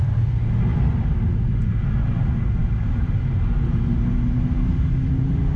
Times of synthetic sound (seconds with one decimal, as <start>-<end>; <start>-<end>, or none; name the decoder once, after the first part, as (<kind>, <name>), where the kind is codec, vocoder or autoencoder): none